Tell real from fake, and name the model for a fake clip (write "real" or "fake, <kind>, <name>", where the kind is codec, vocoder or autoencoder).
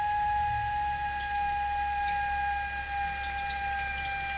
real